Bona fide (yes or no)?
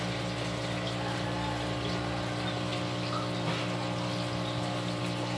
yes